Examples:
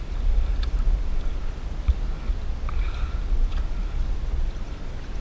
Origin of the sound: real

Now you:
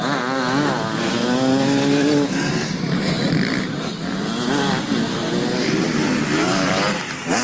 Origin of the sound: real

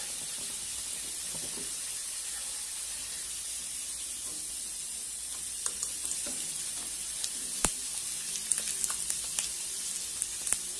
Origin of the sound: real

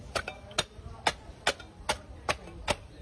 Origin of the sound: real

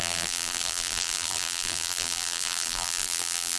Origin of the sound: fake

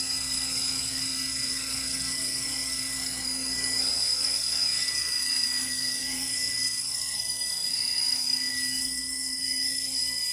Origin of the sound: fake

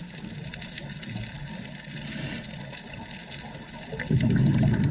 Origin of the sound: real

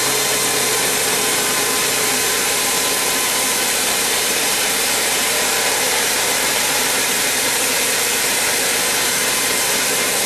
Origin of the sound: fake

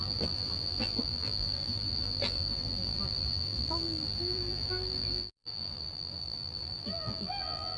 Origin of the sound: fake